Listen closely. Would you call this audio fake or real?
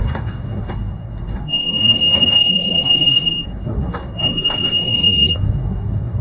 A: fake